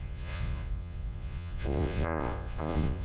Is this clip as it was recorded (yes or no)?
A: no